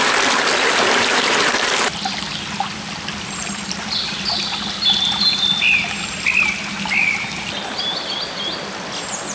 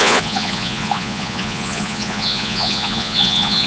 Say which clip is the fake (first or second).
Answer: second